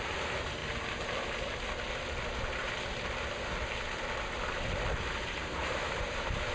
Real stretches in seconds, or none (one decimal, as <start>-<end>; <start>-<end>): 0.6-4.4